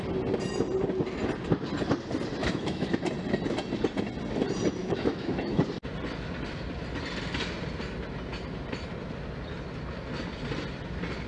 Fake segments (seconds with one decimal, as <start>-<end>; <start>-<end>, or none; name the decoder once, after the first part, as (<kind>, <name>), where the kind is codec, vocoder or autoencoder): 2.4-3.0 (autoencoder, DAC-VAE); 4.8-5.6